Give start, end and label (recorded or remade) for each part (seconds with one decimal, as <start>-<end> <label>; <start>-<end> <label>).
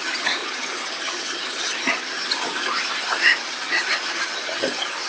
0.0-5.1 remade